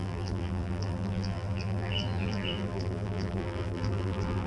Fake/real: fake